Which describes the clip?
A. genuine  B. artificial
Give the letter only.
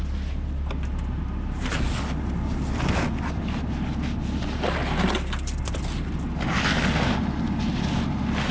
A